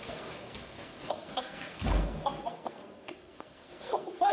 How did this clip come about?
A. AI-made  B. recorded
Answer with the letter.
A